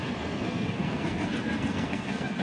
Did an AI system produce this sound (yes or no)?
yes